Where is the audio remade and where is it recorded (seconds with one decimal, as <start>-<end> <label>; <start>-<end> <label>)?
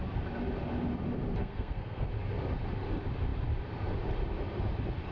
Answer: 0.0-1.4 recorded; 1.4-2.1 remade; 2.1-5.1 recorded